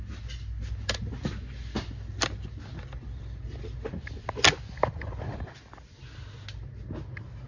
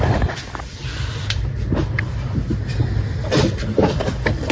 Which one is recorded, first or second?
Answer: first